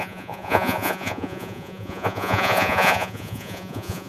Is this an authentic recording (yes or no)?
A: no